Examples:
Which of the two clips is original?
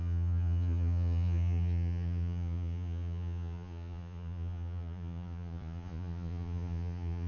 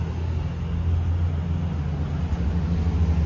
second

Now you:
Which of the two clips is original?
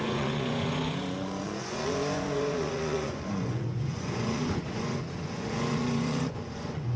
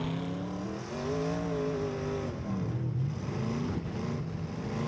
second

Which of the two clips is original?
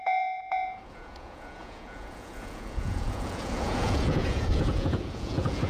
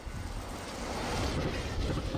second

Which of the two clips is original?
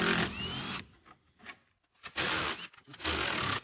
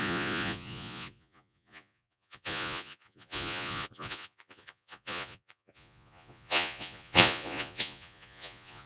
first